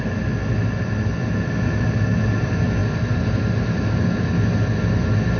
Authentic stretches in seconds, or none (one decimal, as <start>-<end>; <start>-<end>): 0.0-5.4